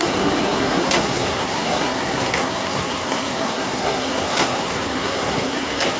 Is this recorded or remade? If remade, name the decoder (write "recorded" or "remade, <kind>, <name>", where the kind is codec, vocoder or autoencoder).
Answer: remade, codec, SNAC